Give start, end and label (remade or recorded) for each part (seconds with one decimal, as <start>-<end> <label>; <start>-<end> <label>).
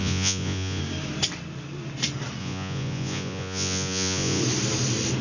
0.0-0.8 remade; 0.8-2.4 recorded; 2.4-4.4 remade; 4.4-5.2 recorded